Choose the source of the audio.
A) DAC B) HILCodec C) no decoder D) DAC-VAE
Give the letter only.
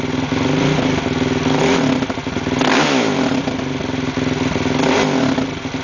C